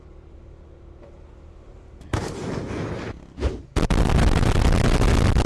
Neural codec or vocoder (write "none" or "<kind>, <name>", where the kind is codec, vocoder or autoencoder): none